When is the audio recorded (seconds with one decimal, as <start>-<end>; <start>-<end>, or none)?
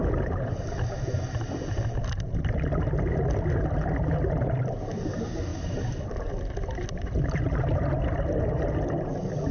0.0-9.5